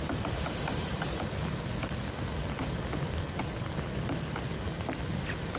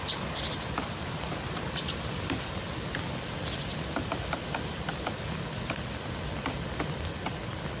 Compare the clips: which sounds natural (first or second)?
first